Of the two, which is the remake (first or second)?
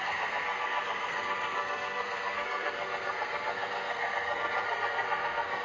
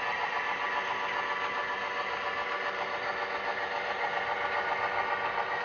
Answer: first